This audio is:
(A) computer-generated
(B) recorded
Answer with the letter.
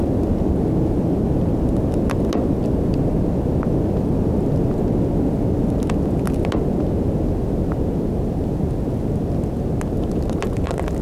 B